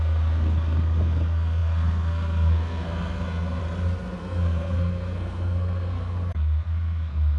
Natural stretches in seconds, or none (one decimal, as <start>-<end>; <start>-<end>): 3.6-4.2